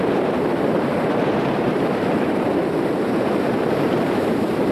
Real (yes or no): no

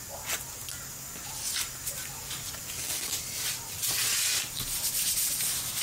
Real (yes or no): yes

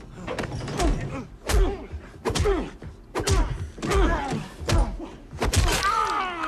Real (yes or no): yes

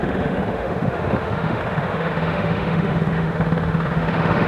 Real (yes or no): no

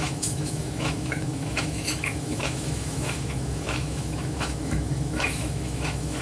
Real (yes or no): no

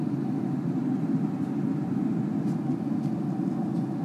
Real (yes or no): yes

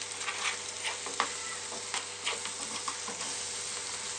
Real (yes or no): yes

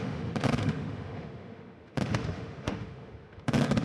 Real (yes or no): no